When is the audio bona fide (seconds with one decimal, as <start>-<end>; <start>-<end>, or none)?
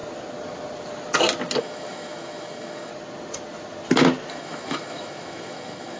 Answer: 0.0-1.6; 2.9-4.3